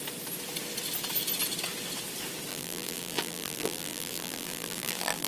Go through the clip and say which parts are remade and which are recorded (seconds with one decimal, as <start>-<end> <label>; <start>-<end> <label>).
0.0-2.5 recorded; 2.5-5.3 remade